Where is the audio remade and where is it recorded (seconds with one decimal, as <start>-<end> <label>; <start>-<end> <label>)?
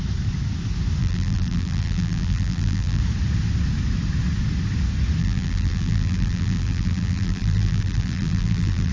0.0-1.0 recorded; 1.0-3.0 remade; 3.0-5.2 recorded; 5.2-8.9 remade